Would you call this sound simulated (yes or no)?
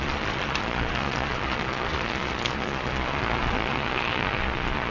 yes